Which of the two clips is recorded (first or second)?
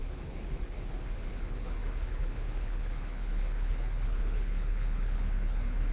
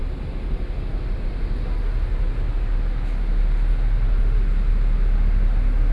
second